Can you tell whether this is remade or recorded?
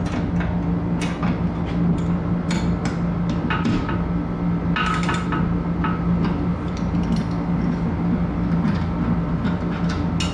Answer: recorded